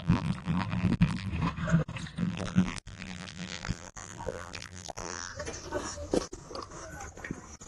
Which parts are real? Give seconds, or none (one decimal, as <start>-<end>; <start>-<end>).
1.3-2.2; 5.3-7.7

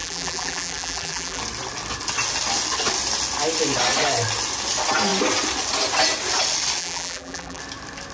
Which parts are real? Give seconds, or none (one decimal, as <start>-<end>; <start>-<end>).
1.4-6.8; 7.6-8.1

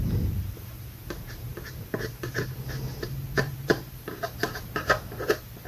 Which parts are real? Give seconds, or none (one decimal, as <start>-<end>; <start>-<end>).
none

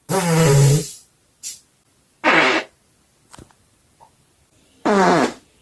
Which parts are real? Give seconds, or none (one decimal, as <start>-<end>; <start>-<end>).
1.0-3.6

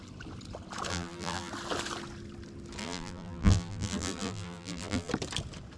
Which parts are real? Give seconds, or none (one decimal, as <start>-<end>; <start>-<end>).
0.0-0.9; 1.5-2.8; 5.1-5.8

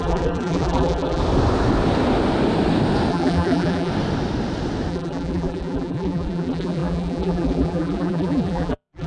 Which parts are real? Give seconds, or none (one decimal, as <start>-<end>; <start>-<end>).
1.2-3.1; 3.9-4.9

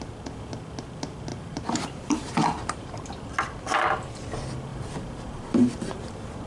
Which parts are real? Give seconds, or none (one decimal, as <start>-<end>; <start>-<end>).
0.0-1.3; 3.1-4.7; 6.1-6.5